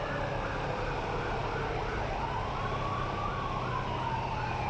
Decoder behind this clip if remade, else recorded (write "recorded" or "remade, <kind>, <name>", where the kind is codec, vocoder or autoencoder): recorded